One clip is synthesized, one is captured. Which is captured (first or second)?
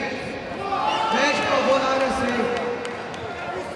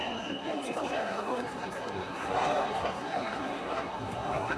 first